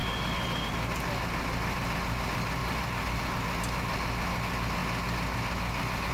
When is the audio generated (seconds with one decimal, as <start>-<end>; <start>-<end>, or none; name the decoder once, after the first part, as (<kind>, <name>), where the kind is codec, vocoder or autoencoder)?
2.6-3.2 (vocoder, BigVGAN v2)